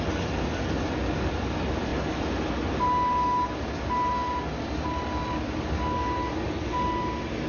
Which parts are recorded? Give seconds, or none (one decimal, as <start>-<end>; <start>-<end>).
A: 0.0-7.5